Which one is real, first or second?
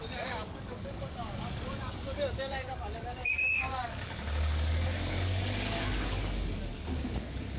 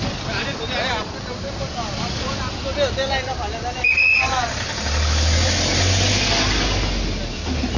second